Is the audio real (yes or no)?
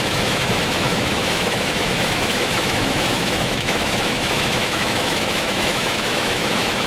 no